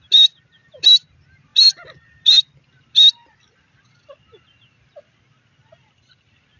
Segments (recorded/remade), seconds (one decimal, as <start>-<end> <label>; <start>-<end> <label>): 0.0-6.6 recorded